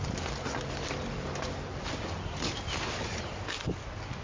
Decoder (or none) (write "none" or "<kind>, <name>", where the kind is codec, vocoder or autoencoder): none